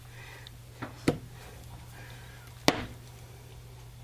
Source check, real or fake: real